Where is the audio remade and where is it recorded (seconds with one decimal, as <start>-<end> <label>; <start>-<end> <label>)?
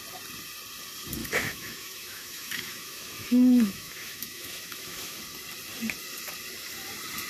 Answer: 0.0-1.2 recorded; 1.2-5.2 remade; 5.2-7.3 recorded